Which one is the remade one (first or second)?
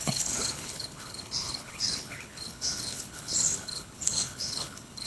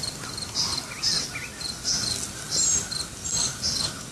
first